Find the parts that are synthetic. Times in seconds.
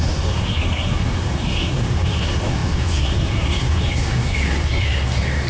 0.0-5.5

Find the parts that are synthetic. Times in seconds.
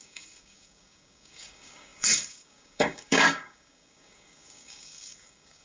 0.0-5.6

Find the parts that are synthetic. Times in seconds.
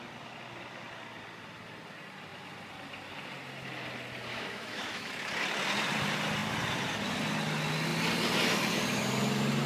4.3-5.1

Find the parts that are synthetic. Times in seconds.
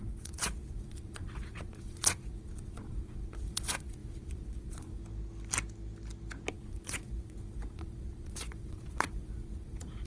0.0-5.0; 6.5-10.1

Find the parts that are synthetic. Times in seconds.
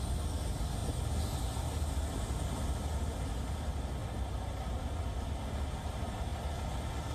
none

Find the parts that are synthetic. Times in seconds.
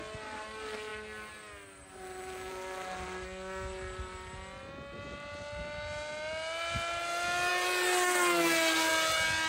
none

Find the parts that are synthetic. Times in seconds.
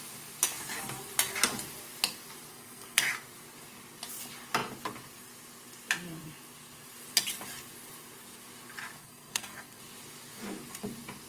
2.5-3.1; 9.0-9.8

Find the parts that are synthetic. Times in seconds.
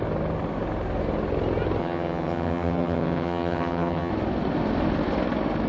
1.8-4.1